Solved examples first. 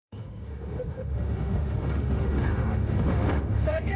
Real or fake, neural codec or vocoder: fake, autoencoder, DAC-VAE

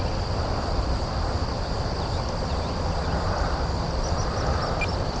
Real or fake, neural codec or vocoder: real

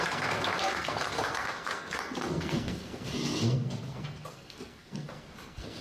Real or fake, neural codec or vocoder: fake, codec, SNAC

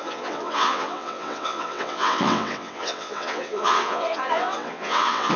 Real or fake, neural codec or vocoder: fake, vocoder, WaveNeXt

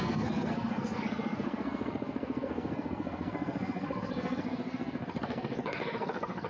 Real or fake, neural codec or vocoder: fake, codec, SNAC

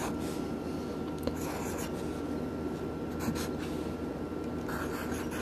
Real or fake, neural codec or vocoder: real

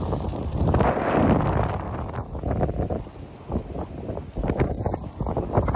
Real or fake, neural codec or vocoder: real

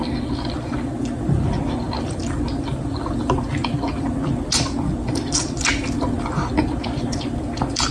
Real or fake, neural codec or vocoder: real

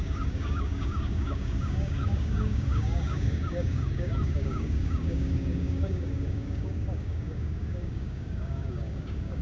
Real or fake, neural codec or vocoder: fake, codec, DAC